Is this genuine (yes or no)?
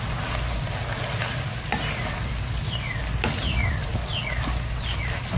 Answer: yes